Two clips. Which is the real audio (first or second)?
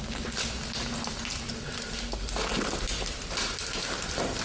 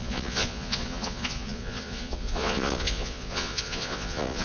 first